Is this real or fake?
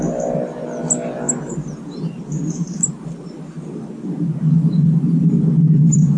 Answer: real